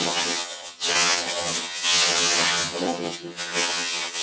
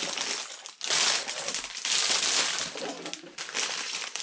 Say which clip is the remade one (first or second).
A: first